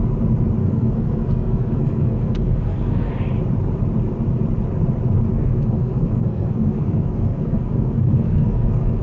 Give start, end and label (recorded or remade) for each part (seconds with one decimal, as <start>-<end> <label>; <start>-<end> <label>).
0.0-0.6 recorded; 0.6-3.1 remade; 3.1-5.3 recorded; 5.3-9.0 remade